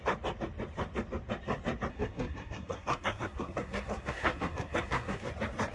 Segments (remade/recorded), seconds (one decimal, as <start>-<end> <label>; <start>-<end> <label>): 0.0-1.9 recorded; 1.9-5.3 remade; 5.3-5.7 recorded